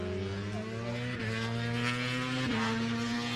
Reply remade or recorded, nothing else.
recorded